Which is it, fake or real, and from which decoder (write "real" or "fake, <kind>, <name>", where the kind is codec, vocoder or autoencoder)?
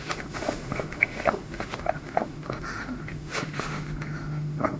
fake, autoencoder, DAC-VAE